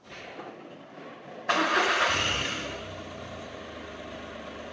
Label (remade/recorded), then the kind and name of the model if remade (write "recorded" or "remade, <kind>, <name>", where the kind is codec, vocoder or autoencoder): recorded